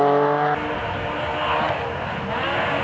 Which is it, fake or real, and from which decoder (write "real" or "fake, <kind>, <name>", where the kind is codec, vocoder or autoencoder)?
real